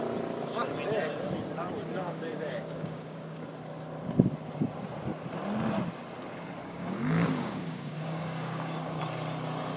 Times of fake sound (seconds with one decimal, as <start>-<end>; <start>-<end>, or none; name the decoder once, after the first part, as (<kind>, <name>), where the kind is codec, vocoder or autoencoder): 2.0-3.5 (codec, DAC); 6.6-9.0

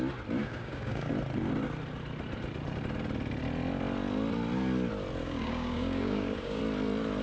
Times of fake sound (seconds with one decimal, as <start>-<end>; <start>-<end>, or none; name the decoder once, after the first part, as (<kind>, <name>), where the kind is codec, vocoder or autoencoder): 0.4-1.1 (codec, DAC); 5.2-6.6